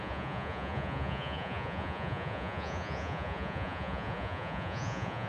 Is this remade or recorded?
remade